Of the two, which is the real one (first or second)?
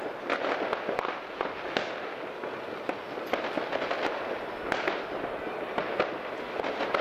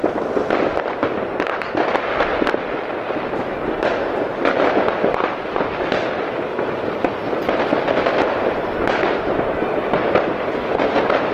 first